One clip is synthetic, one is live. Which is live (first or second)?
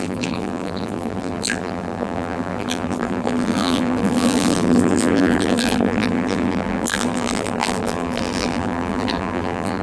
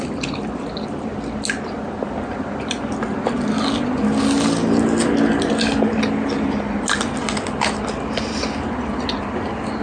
second